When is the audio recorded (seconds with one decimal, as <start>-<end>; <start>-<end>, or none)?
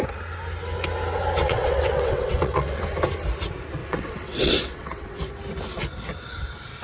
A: 0.0-1.4; 2.8-3.8; 5.3-6.8